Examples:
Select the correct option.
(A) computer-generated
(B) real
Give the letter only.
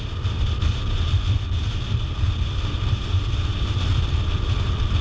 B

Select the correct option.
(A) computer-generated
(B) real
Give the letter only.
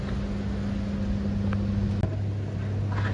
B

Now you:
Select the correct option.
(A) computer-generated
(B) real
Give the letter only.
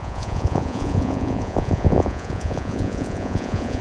A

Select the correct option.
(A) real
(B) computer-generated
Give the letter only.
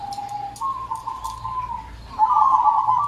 A